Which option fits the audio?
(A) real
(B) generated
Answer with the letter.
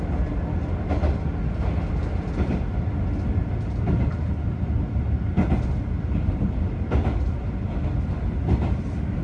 A